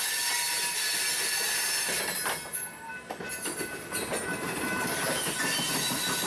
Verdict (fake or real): real